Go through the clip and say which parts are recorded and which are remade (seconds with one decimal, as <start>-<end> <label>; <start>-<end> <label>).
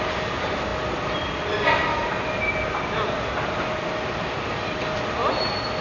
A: 0.0-5.8 recorded